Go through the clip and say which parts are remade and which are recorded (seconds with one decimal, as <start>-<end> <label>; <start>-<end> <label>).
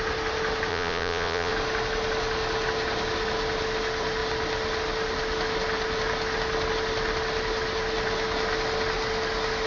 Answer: 0.0-0.7 recorded; 0.7-1.5 remade; 1.5-9.7 recorded